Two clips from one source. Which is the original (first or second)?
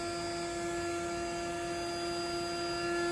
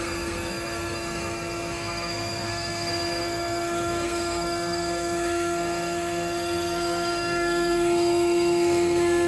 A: first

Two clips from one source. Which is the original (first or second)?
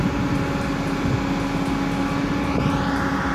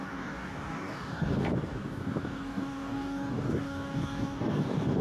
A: first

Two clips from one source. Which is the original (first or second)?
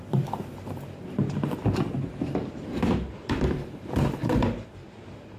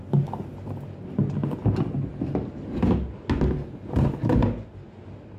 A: second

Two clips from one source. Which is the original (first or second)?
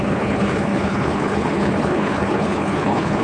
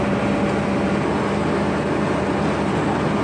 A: second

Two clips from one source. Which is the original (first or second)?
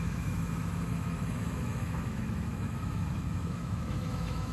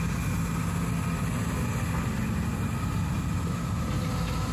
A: second